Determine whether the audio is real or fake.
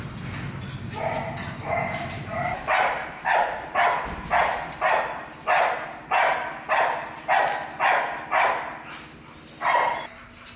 real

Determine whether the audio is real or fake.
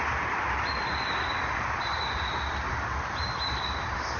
real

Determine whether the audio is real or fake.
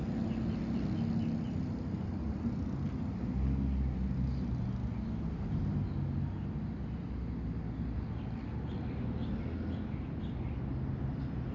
real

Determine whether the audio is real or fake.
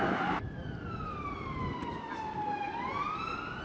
real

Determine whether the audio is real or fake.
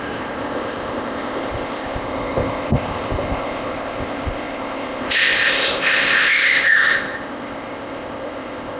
fake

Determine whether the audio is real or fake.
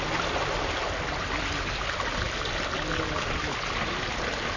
real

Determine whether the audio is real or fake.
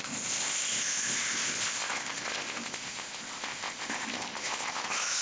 fake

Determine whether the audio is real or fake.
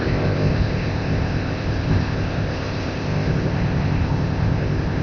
fake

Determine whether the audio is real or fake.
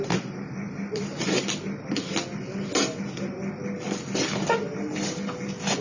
real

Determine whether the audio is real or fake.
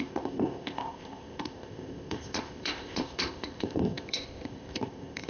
fake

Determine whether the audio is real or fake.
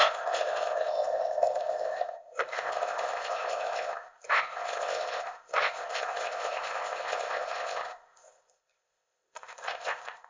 fake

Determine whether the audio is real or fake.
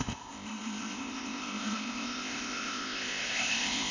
fake